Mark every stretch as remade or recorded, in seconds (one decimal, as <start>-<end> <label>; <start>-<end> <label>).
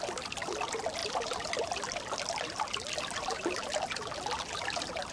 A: 0.0-5.1 recorded